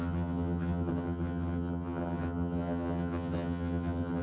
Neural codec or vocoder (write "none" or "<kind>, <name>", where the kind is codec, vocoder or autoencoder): vocoder, HiFi-GAN